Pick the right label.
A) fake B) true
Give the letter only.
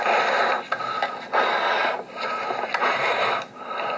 B